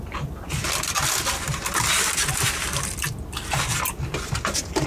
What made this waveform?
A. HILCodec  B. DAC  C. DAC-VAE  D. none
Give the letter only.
D